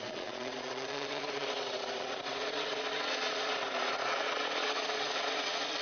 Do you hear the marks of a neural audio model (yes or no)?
yes